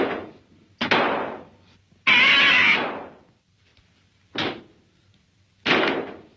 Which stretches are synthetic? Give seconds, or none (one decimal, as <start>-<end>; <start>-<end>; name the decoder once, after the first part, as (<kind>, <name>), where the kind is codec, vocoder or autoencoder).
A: none